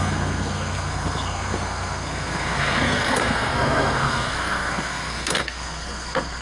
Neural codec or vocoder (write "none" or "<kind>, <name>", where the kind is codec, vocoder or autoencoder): codec, SNAC